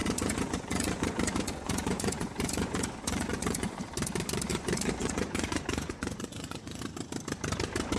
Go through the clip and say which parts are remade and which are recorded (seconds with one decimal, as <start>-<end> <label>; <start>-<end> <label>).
0.0-3.8 remade; 3.8-4.5 recorded; 4.5-6.8 remade; 6.8-8.0 recorded